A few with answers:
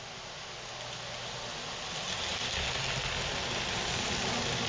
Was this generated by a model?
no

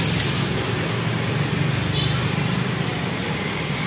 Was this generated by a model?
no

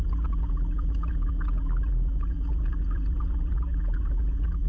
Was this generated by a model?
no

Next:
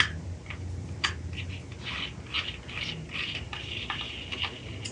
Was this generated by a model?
no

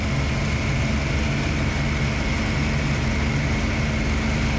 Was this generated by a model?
no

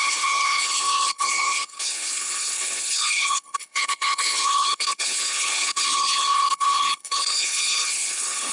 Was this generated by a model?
yes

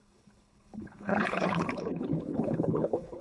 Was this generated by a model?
yes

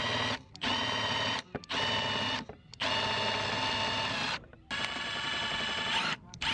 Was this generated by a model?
no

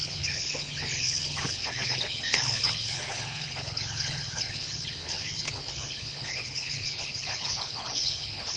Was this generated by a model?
yes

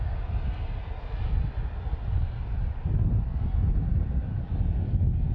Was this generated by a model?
no